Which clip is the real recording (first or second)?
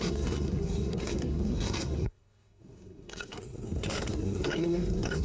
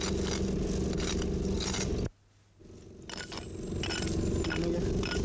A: second